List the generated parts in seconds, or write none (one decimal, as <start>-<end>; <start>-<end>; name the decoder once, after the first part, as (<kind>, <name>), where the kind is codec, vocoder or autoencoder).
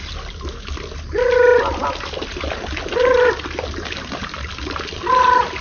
none